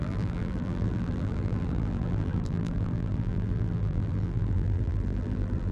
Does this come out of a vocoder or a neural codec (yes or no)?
yes